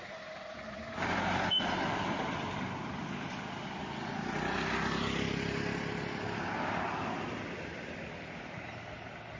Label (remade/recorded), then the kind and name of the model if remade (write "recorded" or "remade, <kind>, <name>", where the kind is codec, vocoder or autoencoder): recorded